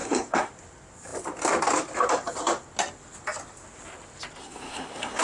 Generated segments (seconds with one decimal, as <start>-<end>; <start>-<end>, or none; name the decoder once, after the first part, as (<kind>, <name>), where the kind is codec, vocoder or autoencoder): 0.0-0.5 (codec, SNAC); 4.4-5.2